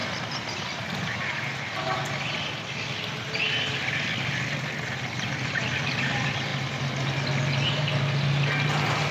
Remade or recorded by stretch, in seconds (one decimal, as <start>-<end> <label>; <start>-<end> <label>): 0.0-6.5 remade; 6.5-7.4 recorded; 7.4-7.9 remade; 7.9-9.1 recorded

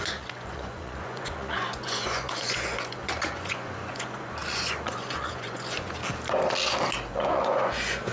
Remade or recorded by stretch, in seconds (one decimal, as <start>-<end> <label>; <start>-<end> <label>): 0.0-6.0 remade; 6.0-7.1 recorded; 7.1-8.1 remade

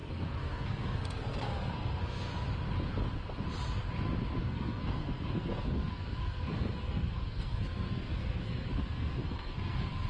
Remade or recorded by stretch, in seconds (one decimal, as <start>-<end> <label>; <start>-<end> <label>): 0.0-2.3 remade; 2.3-4.4 recorded; 4.4-10.1 remade